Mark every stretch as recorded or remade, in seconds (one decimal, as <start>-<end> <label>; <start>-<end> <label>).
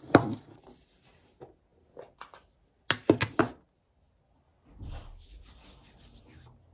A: 0.0-6.7 recorded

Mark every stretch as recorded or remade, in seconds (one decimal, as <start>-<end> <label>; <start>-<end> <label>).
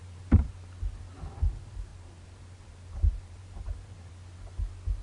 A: 0.0-0.5 remade; 0.5-1.9 recorded; 1.9-4.1 remade; 4.1-5.0 recorded